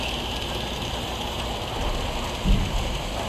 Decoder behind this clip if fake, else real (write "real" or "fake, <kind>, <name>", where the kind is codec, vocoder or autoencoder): real